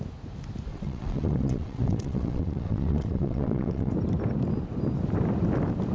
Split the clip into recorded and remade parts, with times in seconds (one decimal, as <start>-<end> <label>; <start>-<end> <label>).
0.0-0.7 recorded; 0.7-3.9 remade; 3.9-5.9 recorded